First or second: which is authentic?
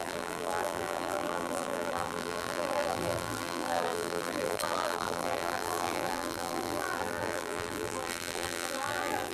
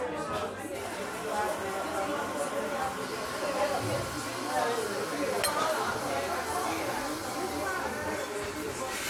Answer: second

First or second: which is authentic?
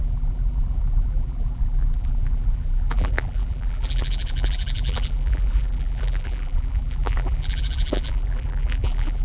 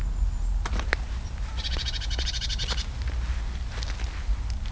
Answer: second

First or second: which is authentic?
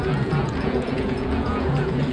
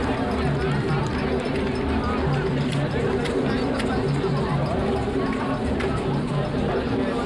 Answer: second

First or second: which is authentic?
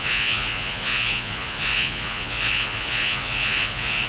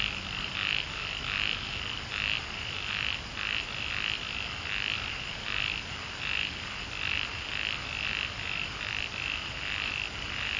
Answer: second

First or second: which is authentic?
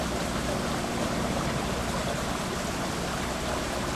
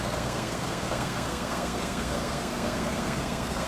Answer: first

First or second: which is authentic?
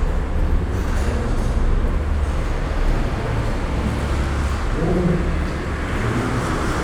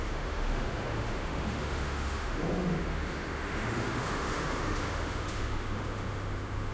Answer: first